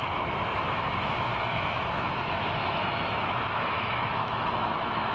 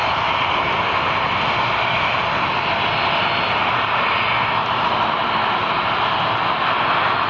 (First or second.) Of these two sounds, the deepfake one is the first